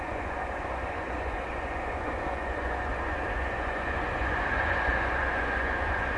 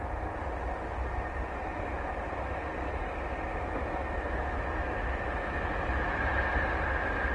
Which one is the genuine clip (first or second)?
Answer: second